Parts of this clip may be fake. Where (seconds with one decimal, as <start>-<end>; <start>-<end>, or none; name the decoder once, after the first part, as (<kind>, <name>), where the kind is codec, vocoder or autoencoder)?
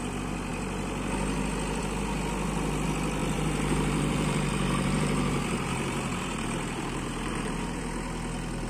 3.2-7.8 (vocoder, BigVGAN v2)